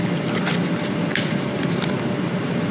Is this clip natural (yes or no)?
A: yes